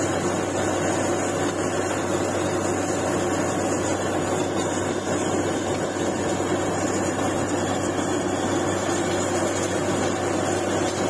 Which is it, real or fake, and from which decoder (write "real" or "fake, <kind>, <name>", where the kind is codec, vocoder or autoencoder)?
real